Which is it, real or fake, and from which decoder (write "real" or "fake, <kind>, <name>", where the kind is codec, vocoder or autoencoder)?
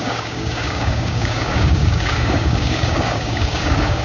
fake, codec, DAC